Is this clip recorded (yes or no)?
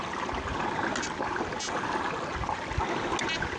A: yes